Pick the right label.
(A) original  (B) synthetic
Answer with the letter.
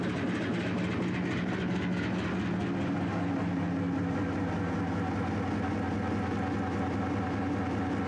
A